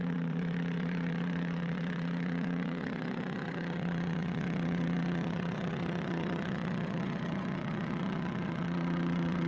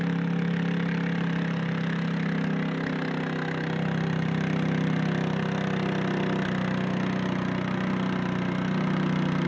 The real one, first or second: second